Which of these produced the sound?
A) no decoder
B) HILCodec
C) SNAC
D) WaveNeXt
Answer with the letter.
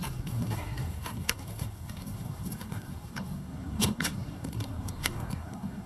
C